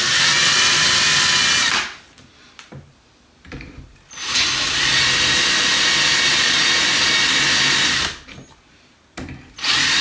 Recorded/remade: recorded